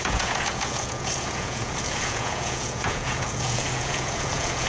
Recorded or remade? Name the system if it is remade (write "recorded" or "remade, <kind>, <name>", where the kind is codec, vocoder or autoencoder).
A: remade, vocoder, Vocos